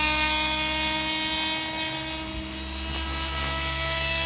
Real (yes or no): yes